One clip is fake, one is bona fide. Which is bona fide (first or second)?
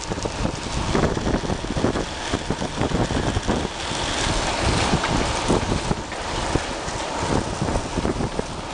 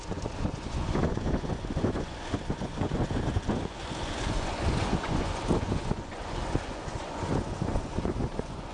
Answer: first